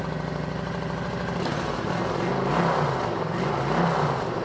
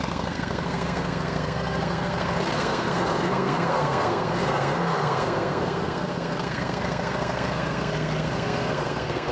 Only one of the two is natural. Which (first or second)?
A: first